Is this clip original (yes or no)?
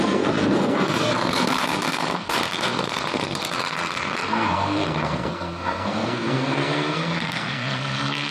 no